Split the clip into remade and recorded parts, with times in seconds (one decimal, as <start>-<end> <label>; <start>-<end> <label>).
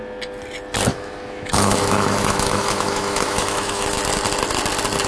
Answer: 0.0-0.9 recorded; 0.9-4.0 remade; 4.0-5.1 recorded